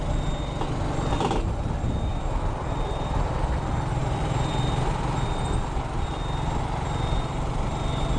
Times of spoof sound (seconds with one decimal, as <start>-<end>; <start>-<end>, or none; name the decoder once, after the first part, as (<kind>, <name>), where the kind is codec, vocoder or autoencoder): 4.0-4.9 (vocoder, BigVGAN v2)